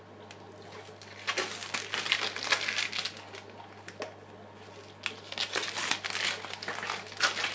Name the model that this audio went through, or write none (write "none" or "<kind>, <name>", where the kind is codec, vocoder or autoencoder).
none